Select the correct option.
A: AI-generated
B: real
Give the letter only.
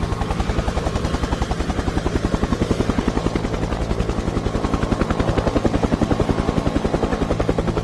B